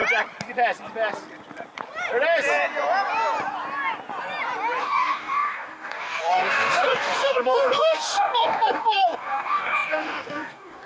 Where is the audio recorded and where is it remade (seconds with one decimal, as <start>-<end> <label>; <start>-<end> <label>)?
0.0-4.8 recorded; 4.8-10.9 remade

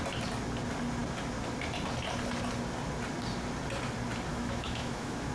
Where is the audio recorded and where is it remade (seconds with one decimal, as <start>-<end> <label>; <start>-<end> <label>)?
0.0-4.3 recorded; 4.3-5.3 remade

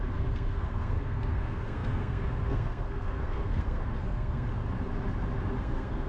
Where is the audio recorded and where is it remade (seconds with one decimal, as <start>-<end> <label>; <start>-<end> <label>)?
0.0-4.5 remade; 4.5-5.6 recorded; 5.6-6.1 remade